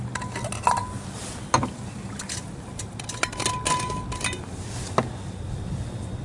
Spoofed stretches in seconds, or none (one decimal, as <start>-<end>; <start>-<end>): none